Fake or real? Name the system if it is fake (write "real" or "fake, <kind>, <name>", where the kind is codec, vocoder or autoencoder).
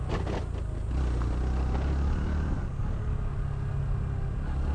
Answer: real